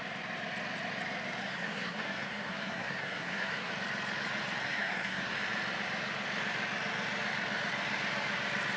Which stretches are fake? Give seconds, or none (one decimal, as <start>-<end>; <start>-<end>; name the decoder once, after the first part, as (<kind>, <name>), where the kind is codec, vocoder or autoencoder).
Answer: 1.4-3.7 (codec, SNAC); 4.6-5.3